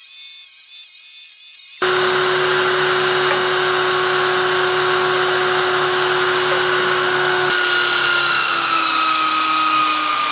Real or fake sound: real